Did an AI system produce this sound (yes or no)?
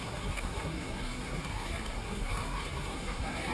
yes